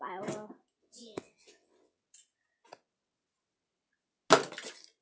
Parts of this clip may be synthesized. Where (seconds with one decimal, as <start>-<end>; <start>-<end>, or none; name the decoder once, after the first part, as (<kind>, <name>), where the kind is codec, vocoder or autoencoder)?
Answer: 0.8-2.0 (vocoder, WaveNeXt)